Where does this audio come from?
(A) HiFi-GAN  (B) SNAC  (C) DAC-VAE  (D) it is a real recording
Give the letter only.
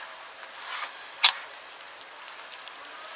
D